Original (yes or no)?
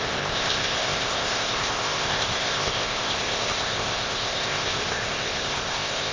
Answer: no